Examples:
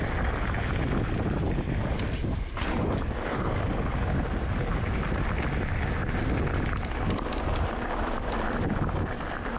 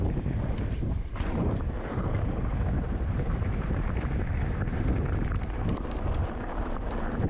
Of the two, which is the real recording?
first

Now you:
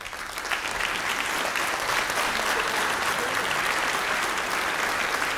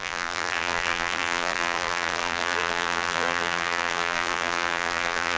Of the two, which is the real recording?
first